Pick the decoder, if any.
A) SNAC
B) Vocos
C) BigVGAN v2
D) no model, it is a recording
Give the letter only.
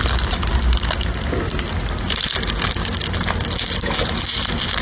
D